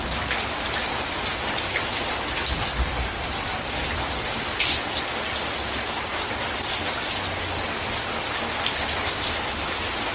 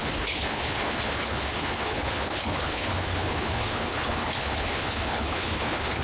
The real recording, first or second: first